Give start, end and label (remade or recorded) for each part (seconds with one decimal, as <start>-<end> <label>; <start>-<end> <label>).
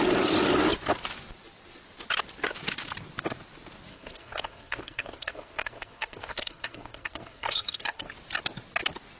0.0-3.9 recorded; 3.9-8.1 remade; 8.1-9.2 recorded